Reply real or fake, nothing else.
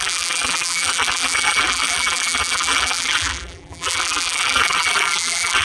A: fake